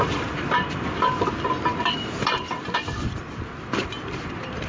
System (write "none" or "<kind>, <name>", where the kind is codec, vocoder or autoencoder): vocoder, BigVGAN v2